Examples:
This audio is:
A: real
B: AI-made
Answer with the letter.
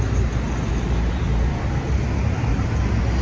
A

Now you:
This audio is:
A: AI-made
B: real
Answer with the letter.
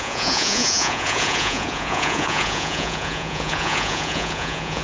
A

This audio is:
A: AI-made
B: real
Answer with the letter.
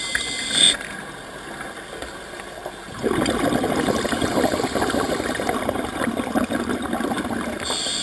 B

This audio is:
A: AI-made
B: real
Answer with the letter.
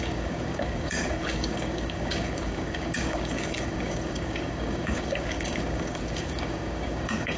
A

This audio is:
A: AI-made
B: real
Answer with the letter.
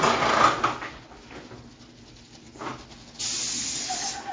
B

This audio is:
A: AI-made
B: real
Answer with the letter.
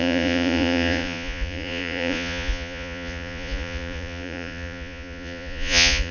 A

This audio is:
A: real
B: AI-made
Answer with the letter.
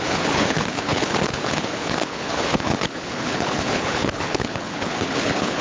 B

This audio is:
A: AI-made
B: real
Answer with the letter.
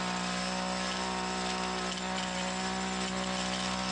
B